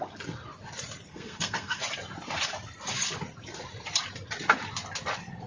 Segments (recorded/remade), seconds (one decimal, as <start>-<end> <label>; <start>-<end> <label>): 0.0-1.1 recorded; 1.1-1.8 remade; 1.8-5.5 recorded